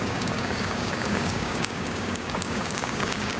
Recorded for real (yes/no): no